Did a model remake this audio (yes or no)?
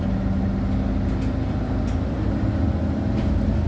no